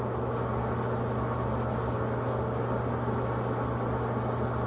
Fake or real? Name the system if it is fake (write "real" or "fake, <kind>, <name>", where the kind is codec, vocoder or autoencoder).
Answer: real